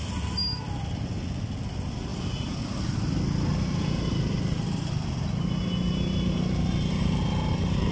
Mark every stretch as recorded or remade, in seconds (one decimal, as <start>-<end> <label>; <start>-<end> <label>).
0.0-7.9 recorded